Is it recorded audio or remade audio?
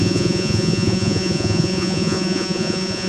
remade